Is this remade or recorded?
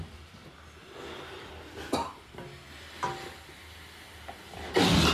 recorded